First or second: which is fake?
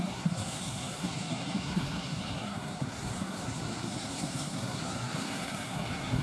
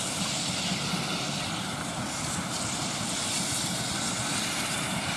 first